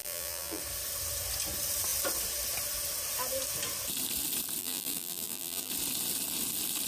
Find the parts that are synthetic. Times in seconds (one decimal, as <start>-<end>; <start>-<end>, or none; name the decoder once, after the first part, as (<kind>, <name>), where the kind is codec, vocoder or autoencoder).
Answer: 0.0-0.6 (vocoder, BigVGAN v2); 4.6-5.7